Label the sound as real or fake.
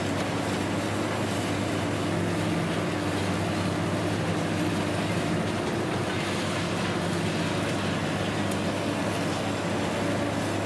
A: real